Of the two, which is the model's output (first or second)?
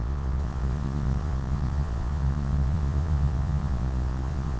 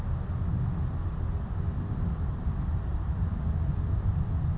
first